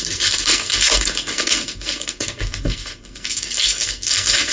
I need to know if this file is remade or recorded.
remade